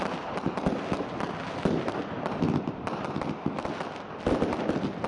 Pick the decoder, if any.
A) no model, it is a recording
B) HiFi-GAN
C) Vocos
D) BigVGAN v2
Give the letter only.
A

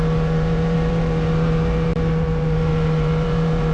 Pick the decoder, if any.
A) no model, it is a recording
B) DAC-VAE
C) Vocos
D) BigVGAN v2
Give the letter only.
D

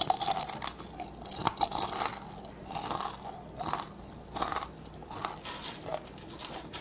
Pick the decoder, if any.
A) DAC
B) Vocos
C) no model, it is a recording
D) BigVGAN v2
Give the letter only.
C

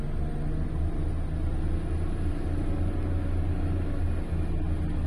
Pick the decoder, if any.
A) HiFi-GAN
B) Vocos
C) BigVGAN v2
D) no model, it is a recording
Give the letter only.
D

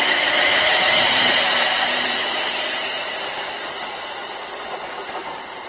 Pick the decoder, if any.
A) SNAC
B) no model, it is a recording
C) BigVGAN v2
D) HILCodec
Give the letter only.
C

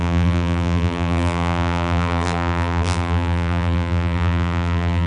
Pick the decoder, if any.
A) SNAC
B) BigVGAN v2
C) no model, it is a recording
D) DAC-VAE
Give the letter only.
B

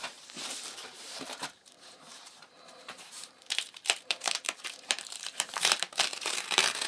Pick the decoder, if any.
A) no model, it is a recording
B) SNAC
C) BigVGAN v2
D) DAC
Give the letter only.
C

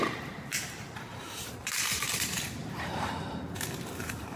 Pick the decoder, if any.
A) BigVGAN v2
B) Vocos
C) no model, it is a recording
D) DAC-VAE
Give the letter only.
A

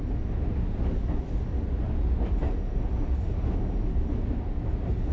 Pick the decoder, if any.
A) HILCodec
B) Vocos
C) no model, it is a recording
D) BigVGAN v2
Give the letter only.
C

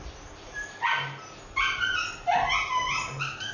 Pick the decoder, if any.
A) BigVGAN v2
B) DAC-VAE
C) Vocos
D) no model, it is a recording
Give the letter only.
D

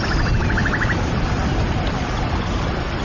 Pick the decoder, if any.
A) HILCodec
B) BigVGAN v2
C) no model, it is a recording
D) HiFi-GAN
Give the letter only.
C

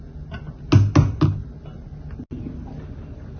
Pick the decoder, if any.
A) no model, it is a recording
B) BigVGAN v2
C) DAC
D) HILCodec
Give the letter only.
A